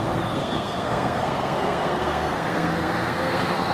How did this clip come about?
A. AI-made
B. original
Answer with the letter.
A